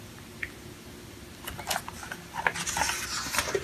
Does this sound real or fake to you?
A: real